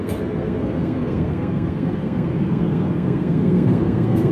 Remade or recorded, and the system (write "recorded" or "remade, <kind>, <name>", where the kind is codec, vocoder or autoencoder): remade, codec, SNAC